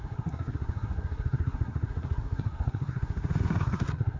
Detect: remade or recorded remade